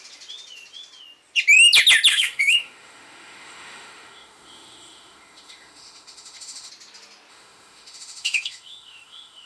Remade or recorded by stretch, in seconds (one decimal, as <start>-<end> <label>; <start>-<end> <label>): 0.0-2.1 recorded; 2.1-6.7 remade; 6.7-7.3 recorded; 7.3-9.5 remade